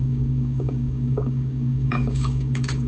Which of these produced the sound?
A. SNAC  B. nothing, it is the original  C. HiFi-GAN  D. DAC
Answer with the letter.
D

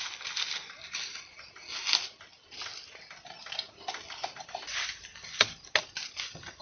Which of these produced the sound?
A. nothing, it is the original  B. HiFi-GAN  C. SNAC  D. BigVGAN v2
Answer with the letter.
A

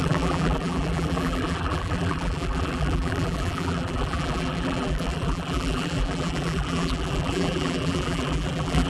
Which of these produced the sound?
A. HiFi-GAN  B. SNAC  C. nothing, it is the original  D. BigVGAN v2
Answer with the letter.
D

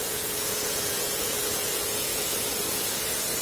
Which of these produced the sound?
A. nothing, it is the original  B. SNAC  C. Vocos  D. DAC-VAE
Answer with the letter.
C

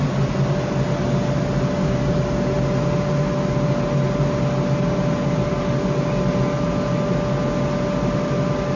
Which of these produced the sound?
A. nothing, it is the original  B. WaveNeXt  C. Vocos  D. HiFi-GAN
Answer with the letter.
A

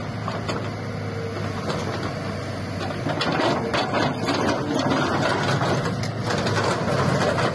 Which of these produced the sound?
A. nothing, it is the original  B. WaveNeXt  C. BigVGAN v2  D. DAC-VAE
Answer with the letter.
A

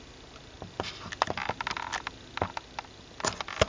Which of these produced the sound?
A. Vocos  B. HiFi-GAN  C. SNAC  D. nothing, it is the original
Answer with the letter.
D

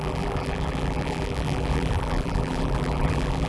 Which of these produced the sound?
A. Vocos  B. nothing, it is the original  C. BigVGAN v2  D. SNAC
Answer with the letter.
C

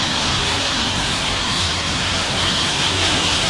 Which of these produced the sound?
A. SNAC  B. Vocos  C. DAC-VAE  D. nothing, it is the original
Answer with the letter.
A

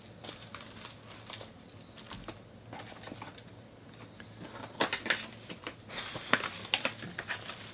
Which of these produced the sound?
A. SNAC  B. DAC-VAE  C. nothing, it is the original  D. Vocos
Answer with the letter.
C